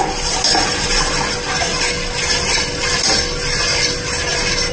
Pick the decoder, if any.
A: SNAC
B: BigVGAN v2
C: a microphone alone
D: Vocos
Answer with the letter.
C